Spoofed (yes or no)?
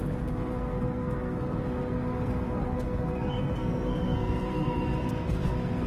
yes